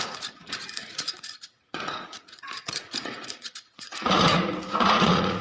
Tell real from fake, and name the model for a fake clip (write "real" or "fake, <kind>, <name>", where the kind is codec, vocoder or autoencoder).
fake, vocoder, Vocos